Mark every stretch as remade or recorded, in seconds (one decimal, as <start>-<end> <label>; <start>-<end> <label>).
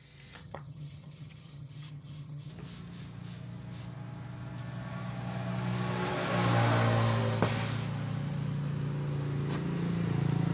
0.0-0.4 recorded; 0.4-2.5 remade; 2.5-10.5 recorded